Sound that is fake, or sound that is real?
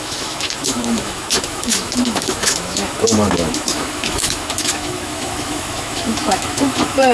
fake